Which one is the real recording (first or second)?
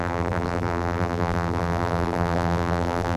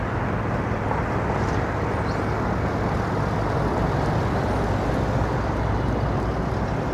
second